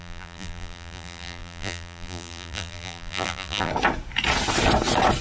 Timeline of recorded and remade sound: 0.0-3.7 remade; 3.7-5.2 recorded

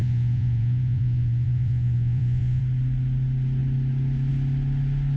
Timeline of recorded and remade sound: 0.0-2.6 remade; 2.6-5.2 recorded

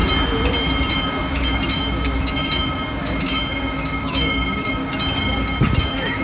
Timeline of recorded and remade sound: 0.0-0.9 recorded; 0.9-4.8 remade; 4.8-5.8 recorded; 5.8-6.2 remade